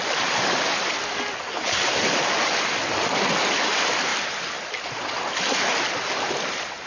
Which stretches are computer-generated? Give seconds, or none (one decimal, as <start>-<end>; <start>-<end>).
none